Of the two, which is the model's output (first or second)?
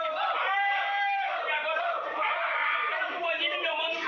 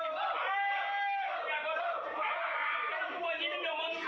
first